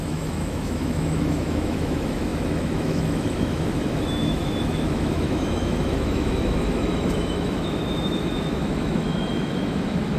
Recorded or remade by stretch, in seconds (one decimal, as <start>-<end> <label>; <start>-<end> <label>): 0.0-10.2 remade